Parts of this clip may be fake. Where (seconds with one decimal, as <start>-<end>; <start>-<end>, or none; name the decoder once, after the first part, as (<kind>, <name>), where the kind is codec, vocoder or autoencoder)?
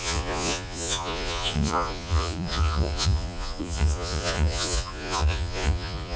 0.0-6.2 (vocoder, Vocos)